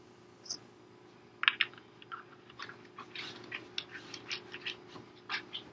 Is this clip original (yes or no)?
yes